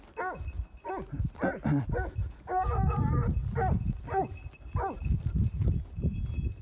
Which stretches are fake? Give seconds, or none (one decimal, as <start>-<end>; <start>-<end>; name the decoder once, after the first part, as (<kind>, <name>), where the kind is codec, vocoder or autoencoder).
none

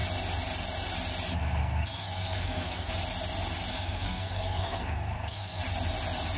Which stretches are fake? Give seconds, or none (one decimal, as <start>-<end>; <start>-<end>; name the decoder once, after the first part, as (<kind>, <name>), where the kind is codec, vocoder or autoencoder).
1.6-2.9 (codec, SNAC); 3.7-5.6

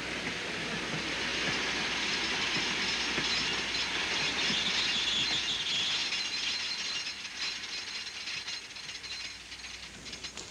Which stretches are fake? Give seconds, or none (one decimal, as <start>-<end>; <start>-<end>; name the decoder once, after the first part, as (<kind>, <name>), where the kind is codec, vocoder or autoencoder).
none

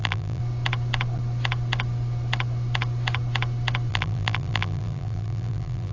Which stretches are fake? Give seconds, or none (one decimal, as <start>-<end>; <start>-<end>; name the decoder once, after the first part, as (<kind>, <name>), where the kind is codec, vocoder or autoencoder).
0.0-0.4 (vocoder, BigVGAN v2); 3.9-5.9

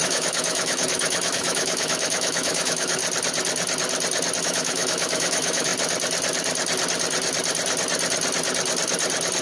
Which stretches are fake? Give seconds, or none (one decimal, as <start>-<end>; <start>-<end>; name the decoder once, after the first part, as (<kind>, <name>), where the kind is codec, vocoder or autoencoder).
0.0-3.0 (autoencoder, DAC-VAE); 4.4-5.7

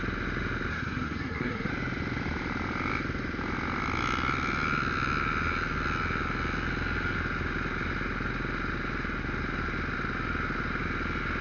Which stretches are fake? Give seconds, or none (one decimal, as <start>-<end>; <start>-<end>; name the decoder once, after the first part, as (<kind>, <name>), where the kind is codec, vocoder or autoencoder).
0.7-1.7 (codec, SNAC)